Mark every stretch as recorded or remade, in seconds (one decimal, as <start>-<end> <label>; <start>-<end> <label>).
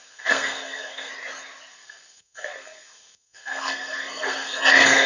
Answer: 0.0-1.1 remade; 1.1-1.7 recorded; 1.7-5.1 remade